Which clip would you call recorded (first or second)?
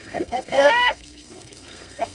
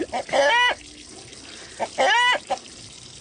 second